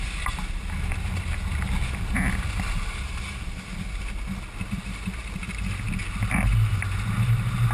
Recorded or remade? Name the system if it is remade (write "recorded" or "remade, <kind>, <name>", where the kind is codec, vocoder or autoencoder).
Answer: recorded